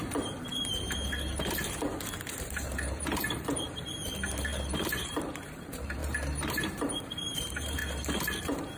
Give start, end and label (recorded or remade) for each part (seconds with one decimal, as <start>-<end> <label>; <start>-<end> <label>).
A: 0.0-0.5 remade; 0.5-1.6 recorded; 1.6-7.8 remade; 7.8-8.4 recorded; 8.4-8.8 remade